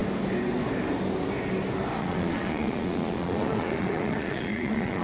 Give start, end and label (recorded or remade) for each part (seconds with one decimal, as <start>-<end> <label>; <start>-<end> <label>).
0.0-2.0 recorded; 2.0-5.0 remade